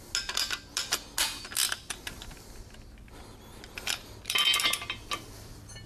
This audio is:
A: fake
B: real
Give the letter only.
B